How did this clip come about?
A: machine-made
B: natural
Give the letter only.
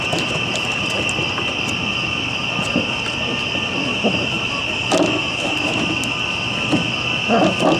B